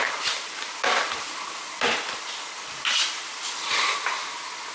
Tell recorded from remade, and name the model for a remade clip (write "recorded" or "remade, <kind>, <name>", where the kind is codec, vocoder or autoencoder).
recorded